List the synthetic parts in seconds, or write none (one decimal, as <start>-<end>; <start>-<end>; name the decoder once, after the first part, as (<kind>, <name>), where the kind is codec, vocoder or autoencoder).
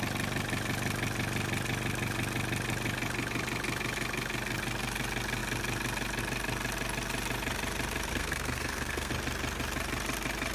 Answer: 8.1-9.1 (codec, SNAC)